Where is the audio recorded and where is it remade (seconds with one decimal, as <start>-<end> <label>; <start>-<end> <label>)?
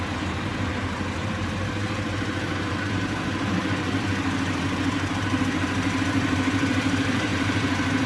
0.0-8.1 remade